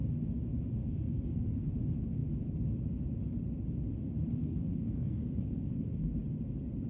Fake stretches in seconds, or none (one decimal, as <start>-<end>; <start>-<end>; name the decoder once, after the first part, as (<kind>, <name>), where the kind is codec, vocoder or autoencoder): 0.8-1.7 (codec, SNAC); 4.4-6.1

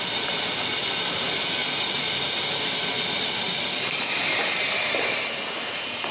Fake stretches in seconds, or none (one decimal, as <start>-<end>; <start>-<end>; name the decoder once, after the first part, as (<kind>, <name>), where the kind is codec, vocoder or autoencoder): none

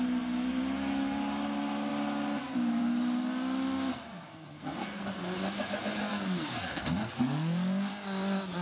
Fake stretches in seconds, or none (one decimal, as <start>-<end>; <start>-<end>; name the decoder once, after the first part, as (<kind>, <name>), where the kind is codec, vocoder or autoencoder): 3.9-5.2 (codec, SNAC); 6.1-7.2

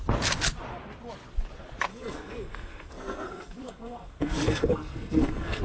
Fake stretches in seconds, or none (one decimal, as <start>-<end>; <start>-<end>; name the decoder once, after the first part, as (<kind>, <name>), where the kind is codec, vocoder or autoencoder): 1.9-5.6 (codec, SNAC)

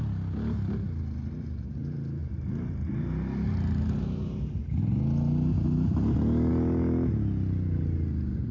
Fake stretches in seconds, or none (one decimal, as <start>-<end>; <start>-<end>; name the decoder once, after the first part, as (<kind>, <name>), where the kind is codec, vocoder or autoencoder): none

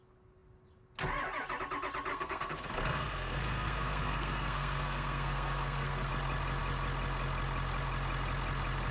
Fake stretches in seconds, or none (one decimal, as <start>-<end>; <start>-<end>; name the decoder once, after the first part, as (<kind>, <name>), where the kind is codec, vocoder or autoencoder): 2.1-6.1 (codec, SNAC)

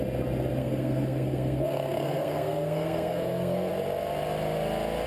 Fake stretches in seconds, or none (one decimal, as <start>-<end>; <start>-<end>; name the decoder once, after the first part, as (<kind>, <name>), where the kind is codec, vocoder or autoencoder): 0.6-3.7 (codec, SNAC)